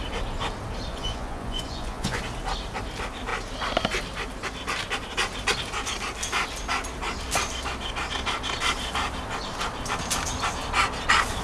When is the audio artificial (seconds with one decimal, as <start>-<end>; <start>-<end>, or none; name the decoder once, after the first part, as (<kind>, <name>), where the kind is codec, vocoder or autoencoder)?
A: 0.9-2.2 (vocoder, Vocos)